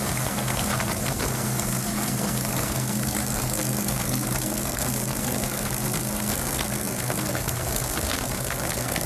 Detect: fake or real fake